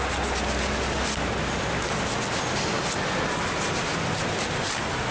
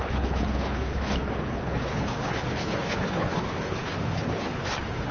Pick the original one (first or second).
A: first